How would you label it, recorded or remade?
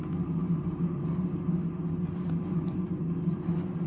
recorded